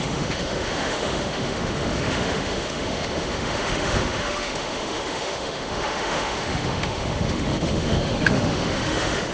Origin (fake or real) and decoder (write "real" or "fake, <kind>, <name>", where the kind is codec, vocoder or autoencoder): fake, autoencoder, DAC-VAE